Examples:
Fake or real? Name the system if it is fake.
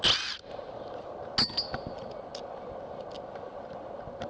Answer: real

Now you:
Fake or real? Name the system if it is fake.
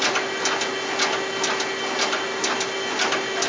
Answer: real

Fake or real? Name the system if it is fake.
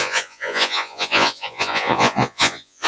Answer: fake, vocoder, Vocos